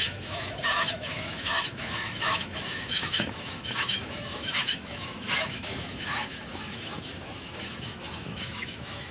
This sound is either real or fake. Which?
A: fake